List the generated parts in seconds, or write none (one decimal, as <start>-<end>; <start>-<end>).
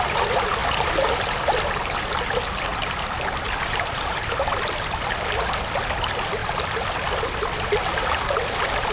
2.7-5.3; 6.4-7.8